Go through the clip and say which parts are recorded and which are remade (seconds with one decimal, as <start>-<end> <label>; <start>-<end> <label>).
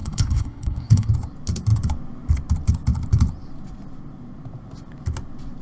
0.0-1.1 remade; 1.1-5.6 recorded